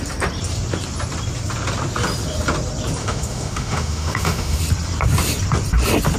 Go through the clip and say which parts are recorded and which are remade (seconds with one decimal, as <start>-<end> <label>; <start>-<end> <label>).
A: 0.0-3.0 recorded; 3.0-4.6 remade; 4.6-6.2 recorded